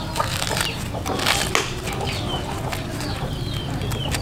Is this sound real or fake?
real